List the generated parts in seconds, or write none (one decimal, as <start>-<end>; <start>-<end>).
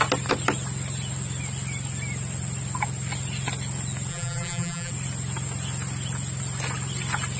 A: 4.1-4.9